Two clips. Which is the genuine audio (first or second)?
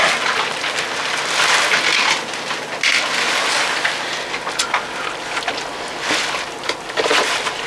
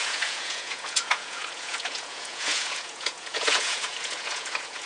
first